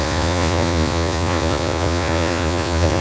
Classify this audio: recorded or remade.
remade